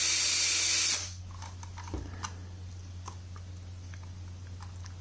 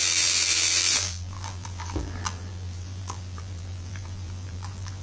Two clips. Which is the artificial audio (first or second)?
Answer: second